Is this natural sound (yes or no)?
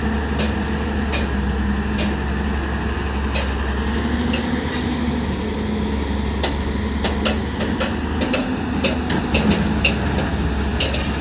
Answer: yes